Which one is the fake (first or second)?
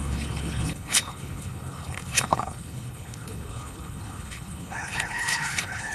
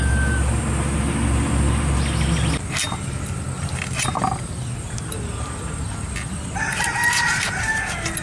first